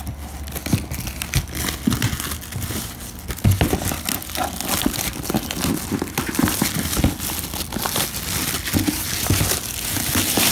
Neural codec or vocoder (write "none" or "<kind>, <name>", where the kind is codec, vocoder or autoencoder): none